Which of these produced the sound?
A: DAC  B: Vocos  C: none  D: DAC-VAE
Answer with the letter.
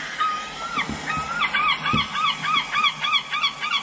C